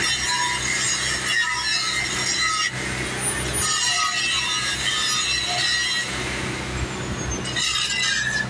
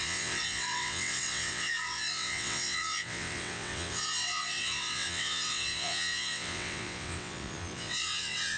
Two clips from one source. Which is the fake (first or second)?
second